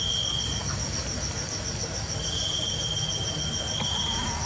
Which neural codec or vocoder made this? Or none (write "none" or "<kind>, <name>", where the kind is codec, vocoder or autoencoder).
none